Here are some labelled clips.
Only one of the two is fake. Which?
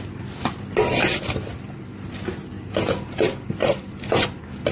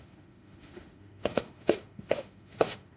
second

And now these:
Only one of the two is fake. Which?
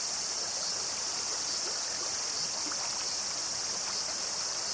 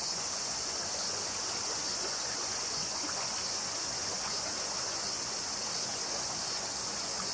second